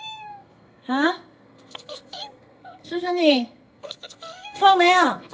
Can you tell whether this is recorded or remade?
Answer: remade